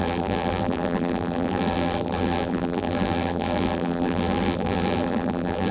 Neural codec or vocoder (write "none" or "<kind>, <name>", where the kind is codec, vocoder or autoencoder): vocoder, BigVGAN v2